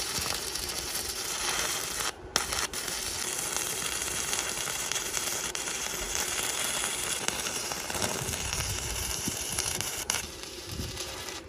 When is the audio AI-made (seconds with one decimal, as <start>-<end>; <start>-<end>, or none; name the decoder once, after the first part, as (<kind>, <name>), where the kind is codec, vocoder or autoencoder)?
0.0-2.3 (vocoder, BigVGAN v2); 4.0-11.5